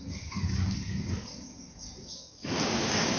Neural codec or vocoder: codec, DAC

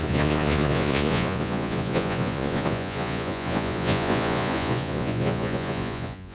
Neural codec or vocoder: vocoder, Vocos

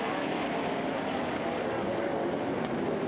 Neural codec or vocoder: none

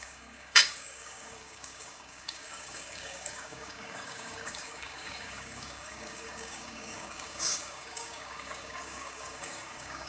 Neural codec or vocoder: codec, DAC